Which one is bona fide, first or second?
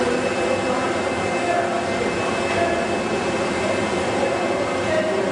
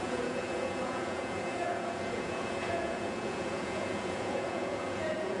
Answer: first